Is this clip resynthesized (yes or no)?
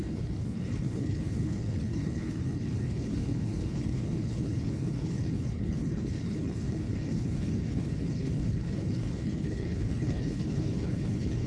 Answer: yes